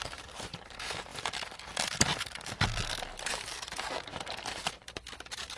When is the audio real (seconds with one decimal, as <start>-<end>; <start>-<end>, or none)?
1.1-3.1

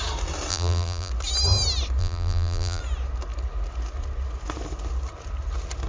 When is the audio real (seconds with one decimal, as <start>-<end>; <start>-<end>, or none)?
0.0-0.5; 1.1-2.0; 2.8-5.9

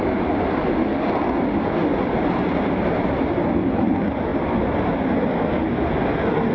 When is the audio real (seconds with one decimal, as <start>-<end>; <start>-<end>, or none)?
0.0-1.9; 3.3-6.5